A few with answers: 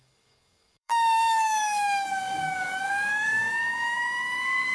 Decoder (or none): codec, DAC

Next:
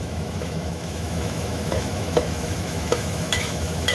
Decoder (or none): autoencoder, DAC-VAE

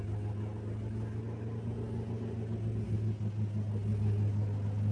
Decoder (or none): none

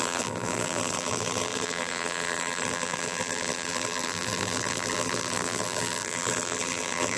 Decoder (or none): vocoder, BigVGAN v2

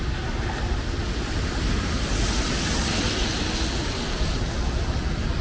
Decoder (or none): none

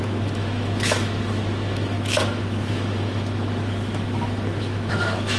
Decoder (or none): autoencoder, DAC-VAE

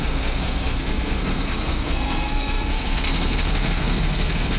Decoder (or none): codec, SNAC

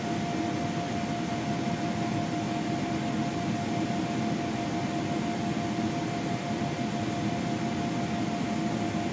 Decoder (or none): none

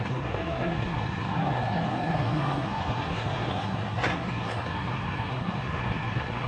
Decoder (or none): codec, SNAC